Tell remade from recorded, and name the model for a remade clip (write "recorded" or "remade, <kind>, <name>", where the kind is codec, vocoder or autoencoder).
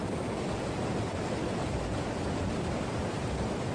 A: recorded